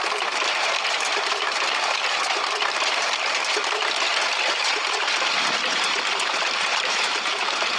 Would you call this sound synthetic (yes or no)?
yes